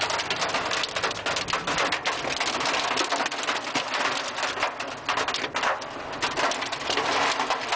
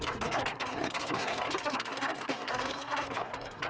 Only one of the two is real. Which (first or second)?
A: first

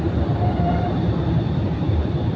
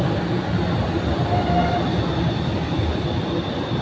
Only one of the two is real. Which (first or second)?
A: second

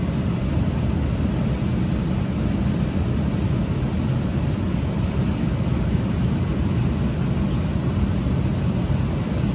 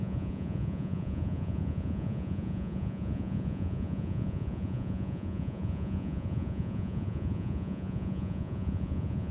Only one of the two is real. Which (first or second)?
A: first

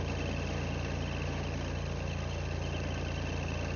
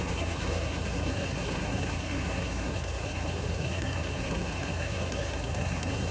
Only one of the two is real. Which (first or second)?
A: first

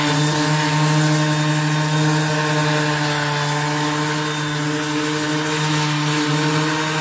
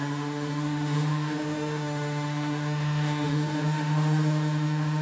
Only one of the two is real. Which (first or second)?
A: first